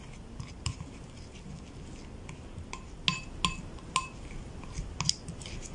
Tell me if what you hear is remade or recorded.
recorded